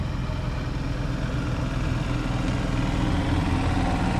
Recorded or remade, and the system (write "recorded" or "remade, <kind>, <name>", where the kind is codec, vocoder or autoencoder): recorded